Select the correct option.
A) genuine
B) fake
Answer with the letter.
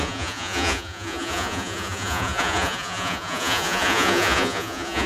B